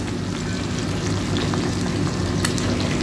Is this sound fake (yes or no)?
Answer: no